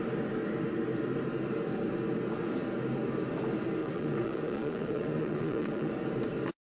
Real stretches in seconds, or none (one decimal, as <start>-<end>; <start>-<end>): 0.0-3.8; 5.9-6.7